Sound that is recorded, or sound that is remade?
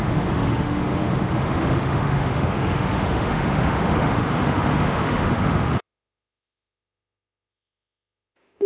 remade